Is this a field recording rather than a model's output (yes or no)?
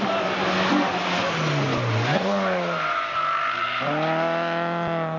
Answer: yes